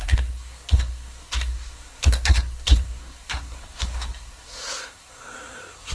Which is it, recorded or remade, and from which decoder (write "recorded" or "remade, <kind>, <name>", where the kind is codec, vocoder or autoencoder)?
remade, codec, SNAC